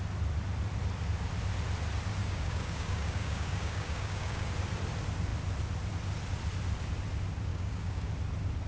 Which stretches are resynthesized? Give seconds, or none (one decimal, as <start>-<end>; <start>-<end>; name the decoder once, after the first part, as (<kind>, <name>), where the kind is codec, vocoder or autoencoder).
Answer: 2.2-4.5 (codec, DAC); 7.5-8.1